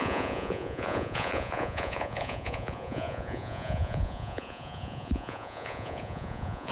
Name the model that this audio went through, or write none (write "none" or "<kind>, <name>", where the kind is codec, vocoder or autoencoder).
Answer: vocoder, Vocos